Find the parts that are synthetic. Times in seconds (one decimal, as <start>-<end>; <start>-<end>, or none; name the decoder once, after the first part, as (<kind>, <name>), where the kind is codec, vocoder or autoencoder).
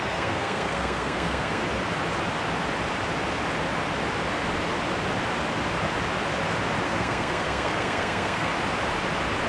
0.0-1.6 (codec, SNAC); 6.8-8.5